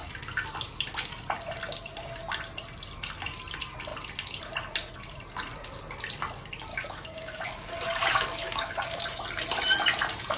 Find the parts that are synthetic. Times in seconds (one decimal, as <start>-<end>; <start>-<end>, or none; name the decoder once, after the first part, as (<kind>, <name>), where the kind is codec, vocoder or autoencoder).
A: 6.7-9.0 (codec, DAC)